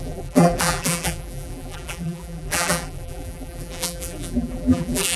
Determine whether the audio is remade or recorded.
remade